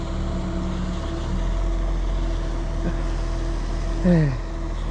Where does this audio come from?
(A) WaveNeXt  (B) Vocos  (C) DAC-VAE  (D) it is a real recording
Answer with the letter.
D